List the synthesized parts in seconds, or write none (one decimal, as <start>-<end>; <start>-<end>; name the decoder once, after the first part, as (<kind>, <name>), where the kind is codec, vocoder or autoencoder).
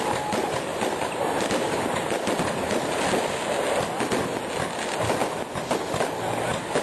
none